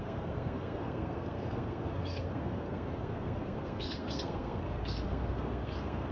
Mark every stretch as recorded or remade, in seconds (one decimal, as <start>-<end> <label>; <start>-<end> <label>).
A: 0.0-6.1 remade